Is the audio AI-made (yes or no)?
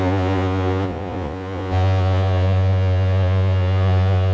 yes